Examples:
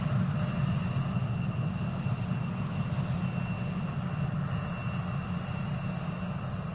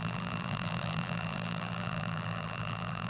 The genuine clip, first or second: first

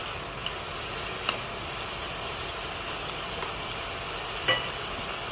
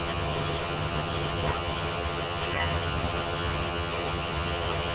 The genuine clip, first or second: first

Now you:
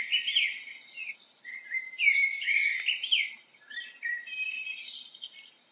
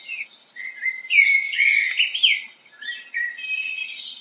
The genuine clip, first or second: second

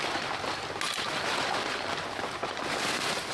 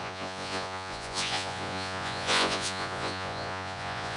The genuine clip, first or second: first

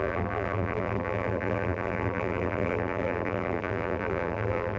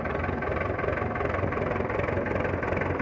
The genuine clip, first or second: second